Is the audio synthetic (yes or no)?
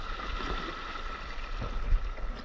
no